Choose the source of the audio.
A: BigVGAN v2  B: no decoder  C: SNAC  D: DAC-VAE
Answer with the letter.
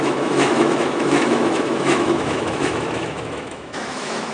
D